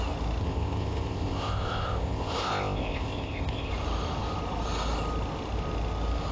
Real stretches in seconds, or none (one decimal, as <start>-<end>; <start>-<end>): 0.0-0.4; 3.7-6.3